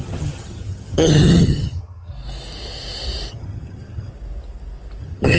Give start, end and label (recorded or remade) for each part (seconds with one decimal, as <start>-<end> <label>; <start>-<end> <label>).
0.0-2.1 remade; 2.1-3.3 recorded; 3.3-4.1 remade; 4.1-5.0 recorded; 5.0-5.4 remade